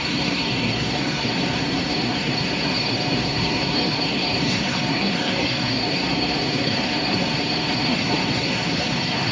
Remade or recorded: remade